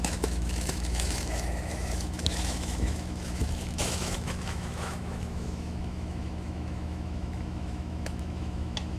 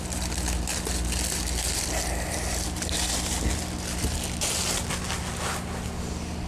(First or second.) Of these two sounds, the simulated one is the first